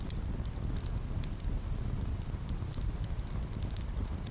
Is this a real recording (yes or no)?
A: yes